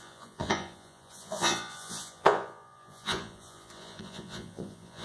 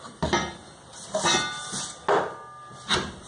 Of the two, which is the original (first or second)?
second